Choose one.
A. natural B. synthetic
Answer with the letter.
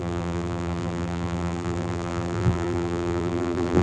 B